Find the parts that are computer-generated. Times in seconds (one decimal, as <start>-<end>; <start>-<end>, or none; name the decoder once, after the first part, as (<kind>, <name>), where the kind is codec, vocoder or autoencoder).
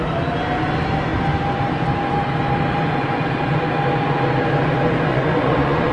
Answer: 5.1-5.9 (vocoder, Vocos)